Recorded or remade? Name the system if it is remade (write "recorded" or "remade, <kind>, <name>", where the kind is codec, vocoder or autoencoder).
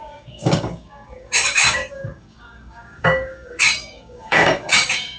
remade, codec, DAC